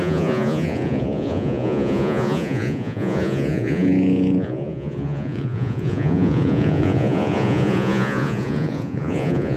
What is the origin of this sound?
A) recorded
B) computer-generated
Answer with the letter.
B